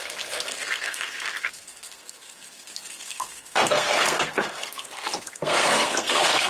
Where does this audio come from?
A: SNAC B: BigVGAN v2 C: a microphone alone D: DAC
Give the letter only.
A